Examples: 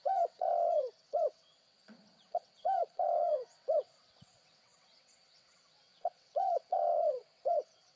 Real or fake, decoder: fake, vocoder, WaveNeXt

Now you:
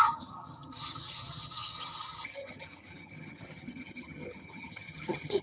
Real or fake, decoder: fake, vocoder, HiFi-GAN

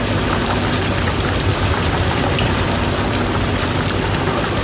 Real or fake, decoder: fake, vocoder, BigVGAN v2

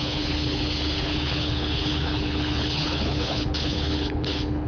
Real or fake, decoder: fake, codec, HILCodec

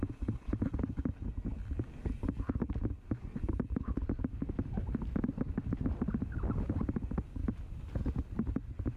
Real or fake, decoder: real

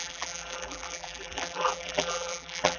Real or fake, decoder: fake, vocoder, BigVGAN v2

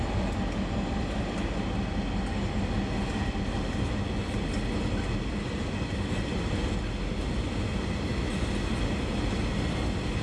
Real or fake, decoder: real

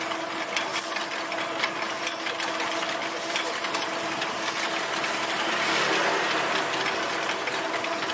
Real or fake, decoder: real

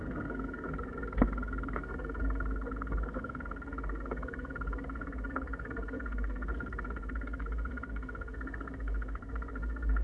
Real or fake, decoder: fake, codec, SNAC